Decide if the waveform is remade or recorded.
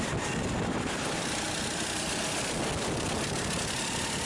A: recorded